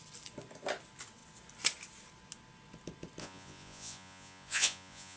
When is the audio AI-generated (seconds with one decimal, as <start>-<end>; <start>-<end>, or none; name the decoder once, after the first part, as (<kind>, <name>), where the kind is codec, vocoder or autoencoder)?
3.2-5.2 (vocoder, Vocos)